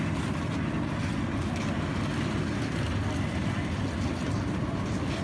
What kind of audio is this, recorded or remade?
recorded